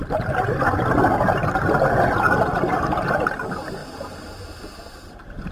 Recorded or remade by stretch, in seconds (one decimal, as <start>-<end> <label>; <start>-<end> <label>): 0.0-5.5 recorded